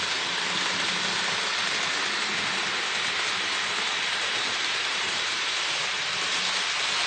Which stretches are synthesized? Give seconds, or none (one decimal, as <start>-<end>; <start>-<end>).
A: 1.5-5.8